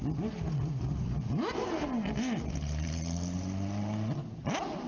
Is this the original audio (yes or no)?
yes